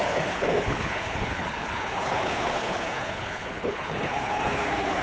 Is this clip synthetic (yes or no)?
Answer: yes